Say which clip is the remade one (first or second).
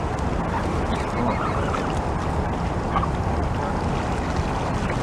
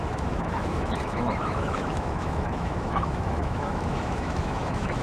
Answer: second